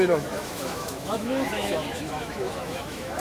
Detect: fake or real fake